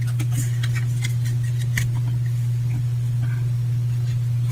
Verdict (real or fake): real